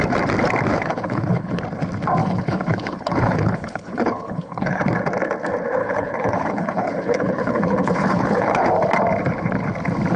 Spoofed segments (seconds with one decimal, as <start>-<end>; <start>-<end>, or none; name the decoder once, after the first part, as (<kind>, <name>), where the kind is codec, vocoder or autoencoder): 0.7-1.6 (codec, HILCodec); 2.2-4.8; 5.8-8.6